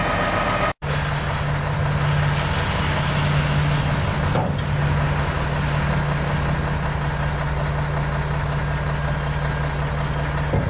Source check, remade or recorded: recorded